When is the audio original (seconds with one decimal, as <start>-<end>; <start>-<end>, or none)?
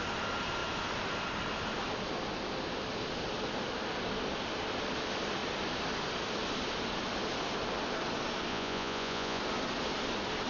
0.0-8.5; 9.4-10.5